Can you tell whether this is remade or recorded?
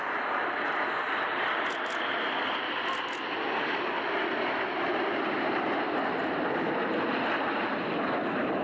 recorded